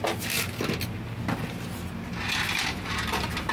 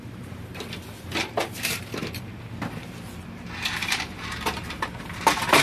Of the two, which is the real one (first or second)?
first